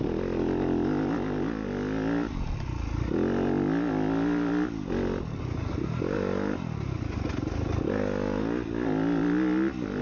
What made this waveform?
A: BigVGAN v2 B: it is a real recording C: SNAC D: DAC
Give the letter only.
B